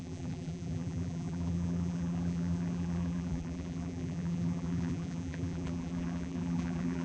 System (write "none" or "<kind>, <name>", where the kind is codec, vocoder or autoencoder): vocoder, BigVGAN v2